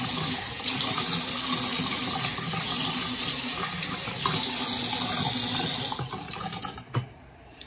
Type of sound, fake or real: real